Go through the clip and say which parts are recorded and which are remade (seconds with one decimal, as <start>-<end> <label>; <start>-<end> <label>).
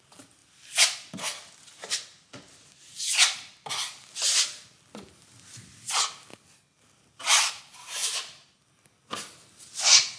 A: 0.0-0.4 recorded; 0.4-1.2 remade; 1.2-2.1 recorded; 2.1-3.8 remade; 3.8-6.3 recorded; 6.3-7.6 remade; 7.6-8.0 recorded; 8.0-8.6 remade; 8.6-10.2 recorded